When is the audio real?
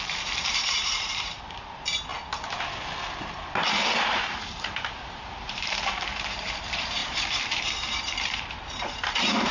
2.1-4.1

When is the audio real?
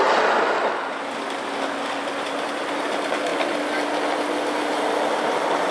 0.0-5.7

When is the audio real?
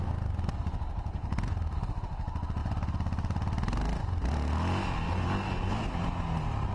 0.0-6.7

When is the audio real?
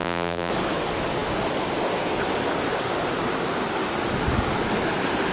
0.5-5.3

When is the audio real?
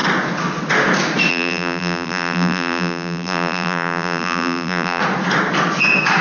0.0-1.3; 5.0-6.2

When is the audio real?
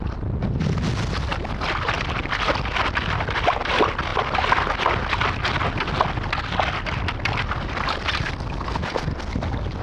0.0-9.8